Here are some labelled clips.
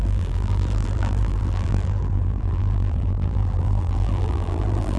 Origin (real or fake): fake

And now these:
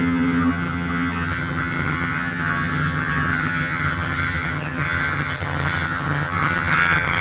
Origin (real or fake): fake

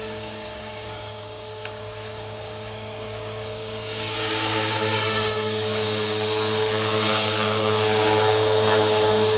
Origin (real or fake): fake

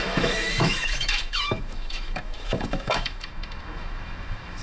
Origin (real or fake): fake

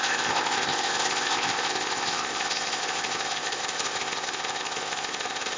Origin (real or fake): fake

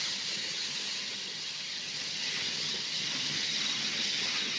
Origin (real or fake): fake